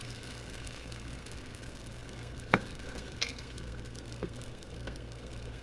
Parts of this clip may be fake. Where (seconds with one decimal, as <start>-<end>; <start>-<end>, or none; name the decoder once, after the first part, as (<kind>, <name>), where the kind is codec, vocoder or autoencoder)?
0.0-5.6 (codec, SNAC)